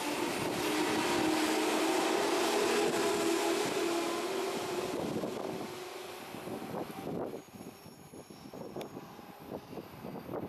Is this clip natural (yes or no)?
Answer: yes